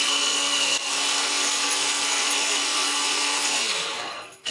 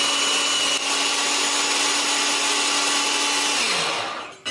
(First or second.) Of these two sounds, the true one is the second